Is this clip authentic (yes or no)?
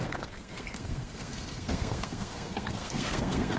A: no